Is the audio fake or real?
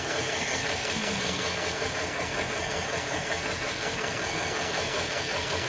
fake